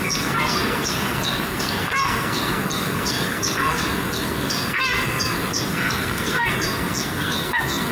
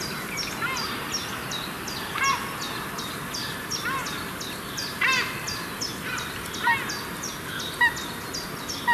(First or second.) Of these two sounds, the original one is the second